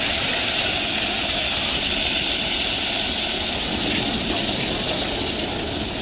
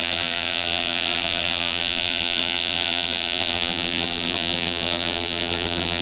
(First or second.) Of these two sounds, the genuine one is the first